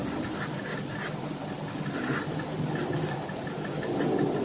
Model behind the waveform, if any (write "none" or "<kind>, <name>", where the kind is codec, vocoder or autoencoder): none